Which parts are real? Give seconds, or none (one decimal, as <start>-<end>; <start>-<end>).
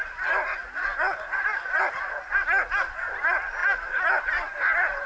0.0-5.1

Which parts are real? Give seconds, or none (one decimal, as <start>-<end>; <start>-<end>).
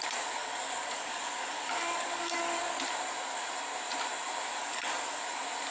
0.0-0.4; 2.8-4.6; 5.2-5.7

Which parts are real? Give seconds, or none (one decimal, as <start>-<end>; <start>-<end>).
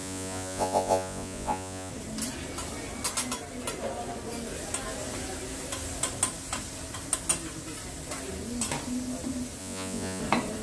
1.9-9.6; 10.2-10.6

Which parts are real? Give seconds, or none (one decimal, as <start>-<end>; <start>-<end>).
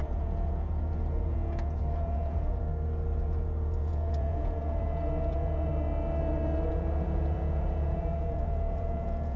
2.7-3.2; 5.7-6.7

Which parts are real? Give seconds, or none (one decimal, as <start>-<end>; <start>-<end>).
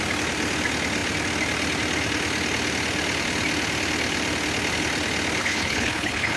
0.0-5.4